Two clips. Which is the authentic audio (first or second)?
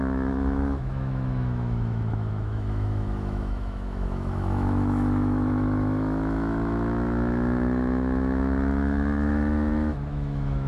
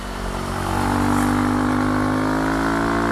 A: second